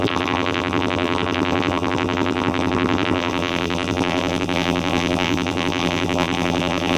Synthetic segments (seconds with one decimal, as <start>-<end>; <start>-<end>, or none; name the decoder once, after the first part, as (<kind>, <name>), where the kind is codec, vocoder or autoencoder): 0.0-7.0 (vocoder, BigVGAN v2)